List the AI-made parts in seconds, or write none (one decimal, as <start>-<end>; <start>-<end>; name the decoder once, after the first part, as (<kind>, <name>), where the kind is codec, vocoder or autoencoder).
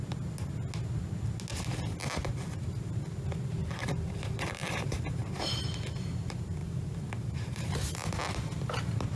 3.6-5.6 (vocoder, BigVGAN v2); 6.6-7.7